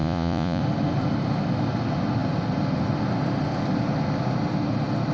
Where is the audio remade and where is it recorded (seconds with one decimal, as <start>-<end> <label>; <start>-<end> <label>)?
0.0-0.6 remade; 0.6-5.1 recorded